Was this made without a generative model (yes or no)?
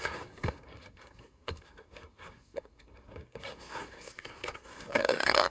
no